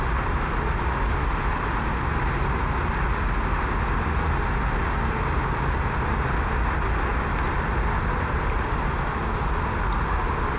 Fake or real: real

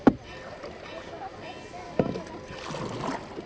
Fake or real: real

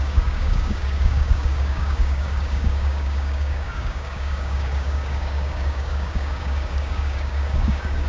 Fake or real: fake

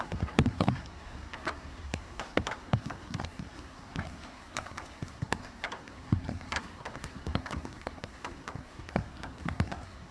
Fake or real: fake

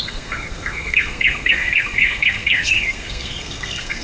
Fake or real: fake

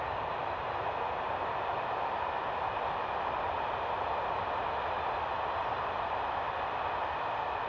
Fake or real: real